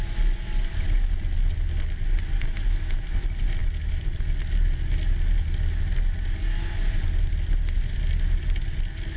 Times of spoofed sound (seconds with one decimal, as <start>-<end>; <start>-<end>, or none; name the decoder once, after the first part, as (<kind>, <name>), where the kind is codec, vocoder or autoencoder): none